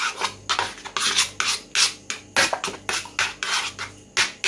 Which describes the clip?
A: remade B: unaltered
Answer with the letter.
B